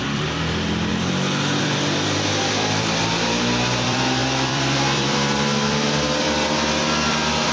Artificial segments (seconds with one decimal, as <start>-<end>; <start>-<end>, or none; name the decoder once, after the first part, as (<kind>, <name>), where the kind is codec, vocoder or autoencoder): 0.0-0.9 (vocoder, BigVGAN v2); 1.6-7.5